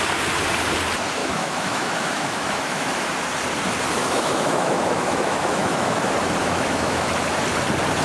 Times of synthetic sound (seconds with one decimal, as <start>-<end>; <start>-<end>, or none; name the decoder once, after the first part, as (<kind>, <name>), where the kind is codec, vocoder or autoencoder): 1.2-3.1 (autoencoder, DAC-VAE); 4.0-6.0; 6.4-7.1